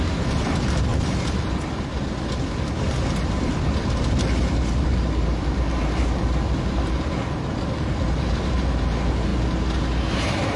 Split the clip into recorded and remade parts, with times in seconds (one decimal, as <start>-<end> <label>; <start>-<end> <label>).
0.0-0.9 remade; 0.9-4.8 recorded; 4.8-9.3 remade; 9.3-10.1 recorded; 10.1-10.6 remade

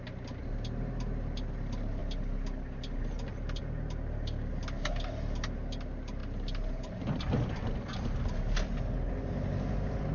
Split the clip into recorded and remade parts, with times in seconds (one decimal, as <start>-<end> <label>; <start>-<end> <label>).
0.0-10.1 recorded

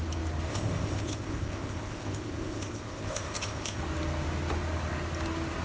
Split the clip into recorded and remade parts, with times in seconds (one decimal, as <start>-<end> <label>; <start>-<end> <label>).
0.0-0.5 recorded; 0.5-3.8 remade; 3.8-5.6 recorded